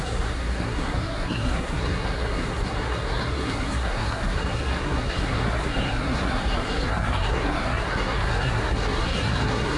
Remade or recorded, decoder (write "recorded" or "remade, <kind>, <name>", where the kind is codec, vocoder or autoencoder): remade, codec, SNAC